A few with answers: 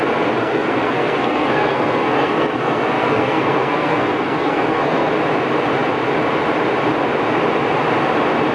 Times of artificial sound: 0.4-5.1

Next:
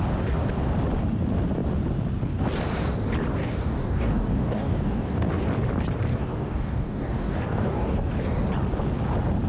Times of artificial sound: 3.4-5.3; 6.1-8.1

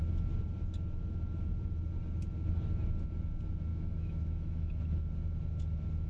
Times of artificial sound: 3.7-4.7